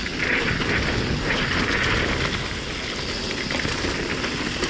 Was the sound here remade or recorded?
recorded